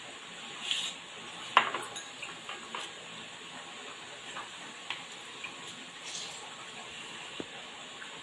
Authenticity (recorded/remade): recorded